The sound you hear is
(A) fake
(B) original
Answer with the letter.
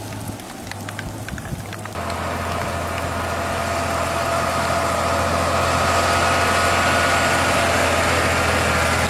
B